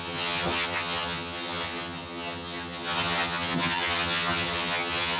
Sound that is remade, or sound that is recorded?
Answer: remade